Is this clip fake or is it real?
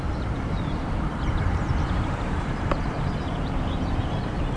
fake